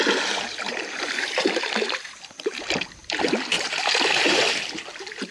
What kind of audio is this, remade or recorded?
remade